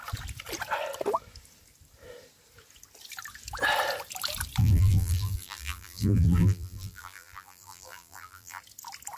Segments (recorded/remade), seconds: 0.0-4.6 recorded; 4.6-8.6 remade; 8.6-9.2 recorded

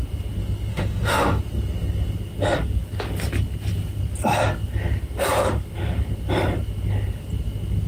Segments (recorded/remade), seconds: 0.0-0.7 recorded; 0.7-1.4 remade; 1.4-7.9 recorded

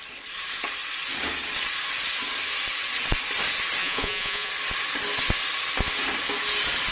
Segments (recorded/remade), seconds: 0.0-3.8 recorded; 3.8-4.5 remade; 4.5-6.9 recorded

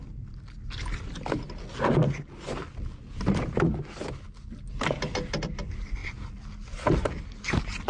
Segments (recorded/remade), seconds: 0.0-7.9 recorded

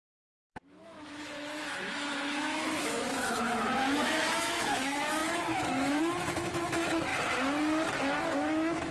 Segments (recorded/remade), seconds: 0.0-7.1 remade; 7.1-8.2 recorded; 8.2-8.9 remade